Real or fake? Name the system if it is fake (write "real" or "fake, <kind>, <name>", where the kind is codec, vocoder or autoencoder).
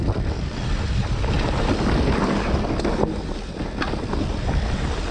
real